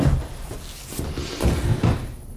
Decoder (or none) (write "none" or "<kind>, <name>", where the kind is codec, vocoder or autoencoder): none